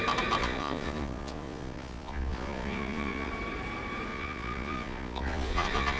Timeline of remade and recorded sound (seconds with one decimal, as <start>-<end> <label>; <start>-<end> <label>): 0.0-0.4 recorded; 0.4-3.3 remade; 3.3-4.1 recorded; 4.1-6.0 remade